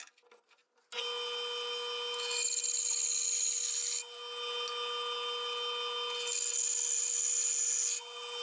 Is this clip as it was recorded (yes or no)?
yes